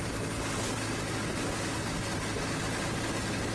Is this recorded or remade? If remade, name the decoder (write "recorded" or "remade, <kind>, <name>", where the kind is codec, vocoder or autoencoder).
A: recorded